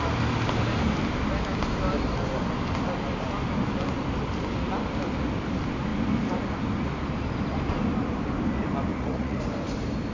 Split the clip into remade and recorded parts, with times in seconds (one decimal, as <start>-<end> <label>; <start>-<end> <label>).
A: 0.0-8.9 recorded; 8.9-9.4 remade; 9.4-10.1 recorded